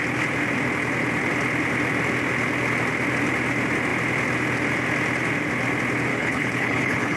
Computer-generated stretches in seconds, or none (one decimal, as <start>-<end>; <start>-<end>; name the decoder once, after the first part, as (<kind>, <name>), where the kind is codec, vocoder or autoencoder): 6.1-7.2 (codec, HILCodec)